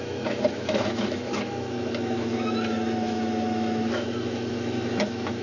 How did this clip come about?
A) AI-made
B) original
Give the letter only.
A